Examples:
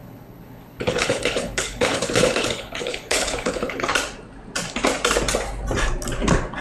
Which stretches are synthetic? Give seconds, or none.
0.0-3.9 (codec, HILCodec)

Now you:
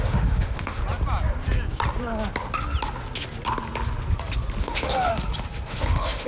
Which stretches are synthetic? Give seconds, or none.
0.0-0.8 (autoencoder, DAC-VAE); 4.6-5.1; 5.7-6.3